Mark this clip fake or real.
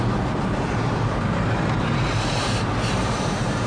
fake